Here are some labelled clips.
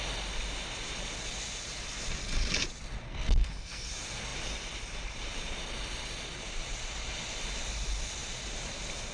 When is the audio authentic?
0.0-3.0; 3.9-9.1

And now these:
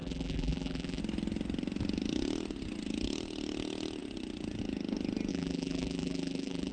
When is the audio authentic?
1.0-5.3

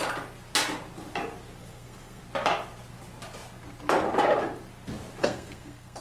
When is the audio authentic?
0.0-1.6; 2.2-5.2

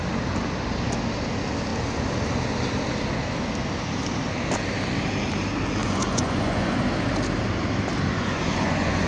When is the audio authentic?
0.0-5.8; 6.8-8.1

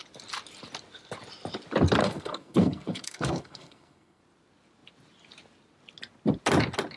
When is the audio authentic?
0.0-2.0; 4.2-7.0

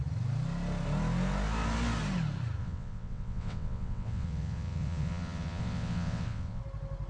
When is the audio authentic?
0.0-2.6; 6.6-7.1

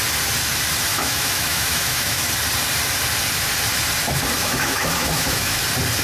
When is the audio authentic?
0.0-0.9; 2.3-4.4; 5.6-6.0

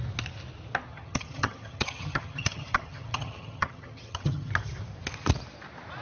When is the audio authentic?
0.0-0.9; 4.5-6.0